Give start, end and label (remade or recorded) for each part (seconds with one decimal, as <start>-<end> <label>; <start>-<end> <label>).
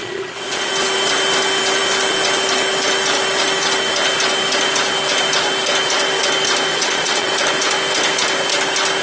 0.0-0.7 remade; 0.7-6.7 recorded; 6.7-7.3 remade; 7.3-9.0 recorded